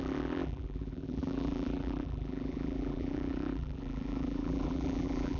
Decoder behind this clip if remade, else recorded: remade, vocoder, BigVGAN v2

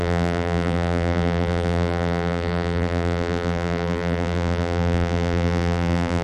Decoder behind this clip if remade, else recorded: remade, vocoder, BigVGAN v2